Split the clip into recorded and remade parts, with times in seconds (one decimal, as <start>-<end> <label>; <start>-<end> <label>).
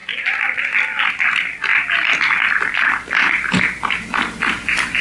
0.0-5.0 recorded